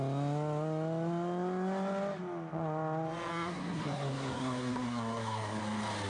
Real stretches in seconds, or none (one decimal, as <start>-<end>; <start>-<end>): 0.0-3.3; 5.6-6.1